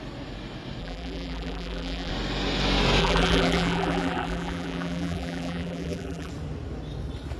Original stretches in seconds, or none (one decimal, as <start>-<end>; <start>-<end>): 0.0-0.8; 2.1-3.0; 6.3-7.4